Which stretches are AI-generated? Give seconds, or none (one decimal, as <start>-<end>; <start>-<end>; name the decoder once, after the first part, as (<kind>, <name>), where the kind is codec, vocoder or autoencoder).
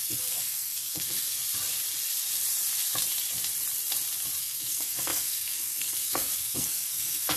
0.0-1.4 (codec, SNAC); 4.4-7.4